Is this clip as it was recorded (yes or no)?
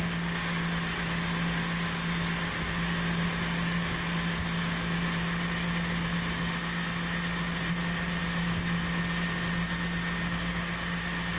yes